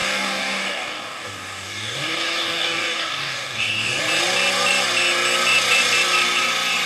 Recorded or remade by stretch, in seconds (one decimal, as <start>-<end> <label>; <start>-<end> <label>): 0.0-4.0 remade; 4.0-6.9 recorded